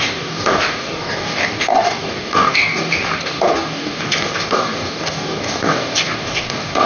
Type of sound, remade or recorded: remade